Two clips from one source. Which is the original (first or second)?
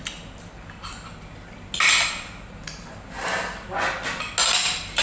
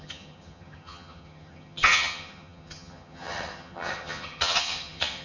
first